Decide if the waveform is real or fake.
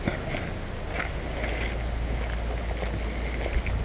real